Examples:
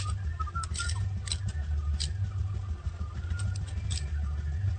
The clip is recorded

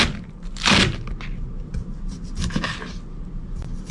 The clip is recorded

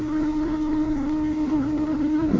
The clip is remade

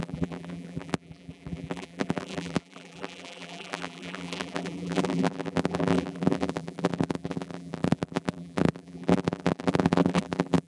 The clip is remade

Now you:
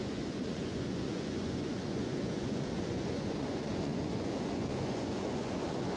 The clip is remade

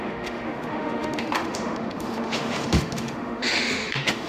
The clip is remade